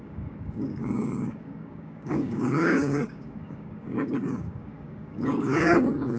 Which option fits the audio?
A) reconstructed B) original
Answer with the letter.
A